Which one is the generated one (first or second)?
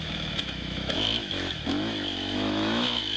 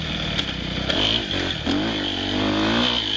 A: first